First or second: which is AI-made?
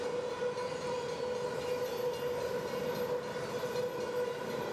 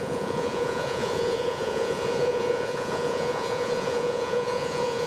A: second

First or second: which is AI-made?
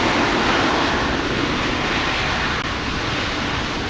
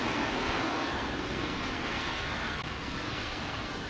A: second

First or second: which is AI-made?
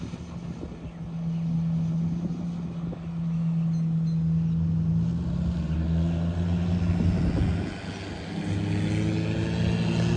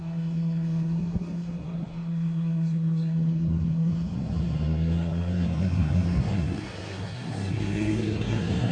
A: second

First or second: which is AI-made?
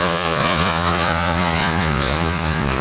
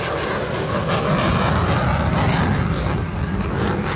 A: first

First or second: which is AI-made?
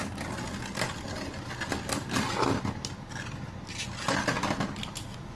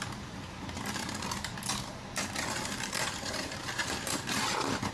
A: second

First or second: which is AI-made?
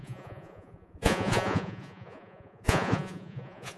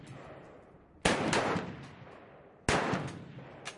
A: first